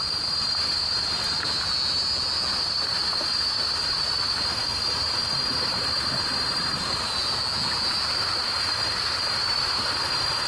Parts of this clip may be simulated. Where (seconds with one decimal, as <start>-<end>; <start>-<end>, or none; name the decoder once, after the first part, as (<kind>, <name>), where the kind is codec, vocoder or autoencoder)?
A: none